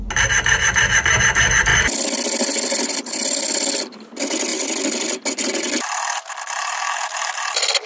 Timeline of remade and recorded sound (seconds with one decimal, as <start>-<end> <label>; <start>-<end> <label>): 0.0-7.9 recorded